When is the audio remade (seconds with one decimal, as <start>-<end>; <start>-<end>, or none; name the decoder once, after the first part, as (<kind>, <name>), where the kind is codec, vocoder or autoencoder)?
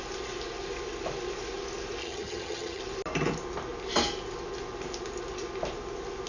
2.0-2.8 (vocoder, HiFi-GAN)